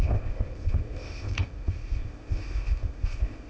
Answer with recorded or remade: remade